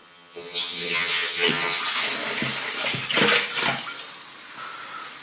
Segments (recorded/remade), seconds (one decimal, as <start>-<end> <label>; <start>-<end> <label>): 0.0-1.8 remade; 1.8-5.2 recorded